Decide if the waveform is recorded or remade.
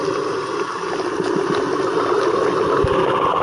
recorded